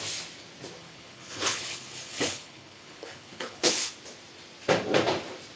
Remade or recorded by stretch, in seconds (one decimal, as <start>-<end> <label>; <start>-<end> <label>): 0.0-0.8 recorded; 0.8-3.9 remade; 3.9-5.6 recorded